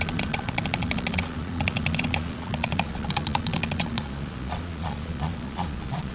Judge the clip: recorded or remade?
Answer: remade